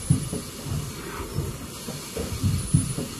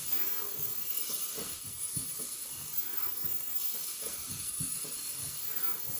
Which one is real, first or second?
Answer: first